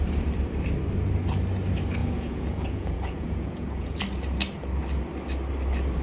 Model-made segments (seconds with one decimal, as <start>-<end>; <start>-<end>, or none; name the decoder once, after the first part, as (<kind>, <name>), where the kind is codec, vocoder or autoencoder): 2.0-4.0 (vocoder, Vocos)

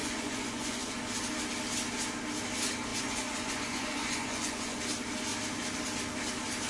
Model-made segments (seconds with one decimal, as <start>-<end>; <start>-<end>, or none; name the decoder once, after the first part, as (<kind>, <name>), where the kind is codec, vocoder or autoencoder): 0.0-1.0 (vocoder, Vocos); 2.9-4.8

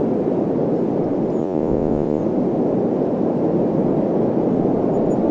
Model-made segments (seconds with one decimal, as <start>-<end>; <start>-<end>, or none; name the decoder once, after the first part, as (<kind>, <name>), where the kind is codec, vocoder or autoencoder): 1.4-2.2 (vocoder, Vocos)

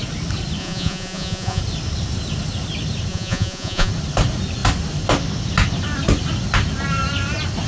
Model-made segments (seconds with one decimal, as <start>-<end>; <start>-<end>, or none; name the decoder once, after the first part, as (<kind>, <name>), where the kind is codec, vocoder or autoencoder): 0.6-1.6 (vocoder, Vocos); 3.1-3.9

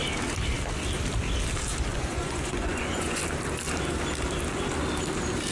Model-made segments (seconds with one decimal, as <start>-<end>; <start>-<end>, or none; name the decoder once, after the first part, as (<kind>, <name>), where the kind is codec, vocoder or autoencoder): 1.9-3.2 (vocoder, Vocos)

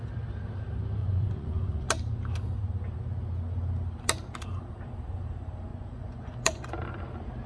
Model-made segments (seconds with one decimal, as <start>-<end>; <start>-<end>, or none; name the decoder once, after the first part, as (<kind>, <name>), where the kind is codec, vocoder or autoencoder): 1.0-1.9 (vocoder, Vocos); 5.7-6.7

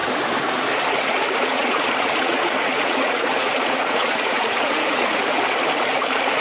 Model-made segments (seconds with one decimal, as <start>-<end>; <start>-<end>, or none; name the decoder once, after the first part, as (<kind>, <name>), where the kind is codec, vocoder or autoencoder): 1.5-5.3 (vocoder, Vocos)

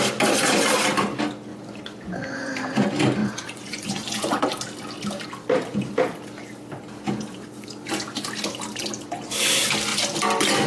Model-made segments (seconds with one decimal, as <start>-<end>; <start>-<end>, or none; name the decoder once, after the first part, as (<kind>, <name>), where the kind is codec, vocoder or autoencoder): 1.5-2.5 (vocoder, Vocos); 3.2-4.4